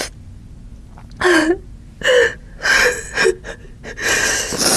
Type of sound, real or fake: real